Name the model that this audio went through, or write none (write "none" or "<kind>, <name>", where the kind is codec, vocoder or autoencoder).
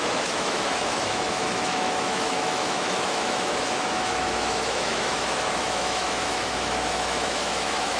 autoencoder, DAC-VAE